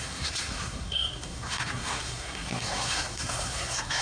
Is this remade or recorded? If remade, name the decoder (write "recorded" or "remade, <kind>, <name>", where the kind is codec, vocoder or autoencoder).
remade, codec, SNAC